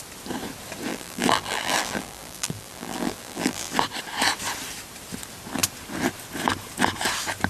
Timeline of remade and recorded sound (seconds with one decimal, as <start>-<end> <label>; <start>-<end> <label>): 0.0-0.9 recorded; 0.9-3.7 remade; 3.7-7.5 recorded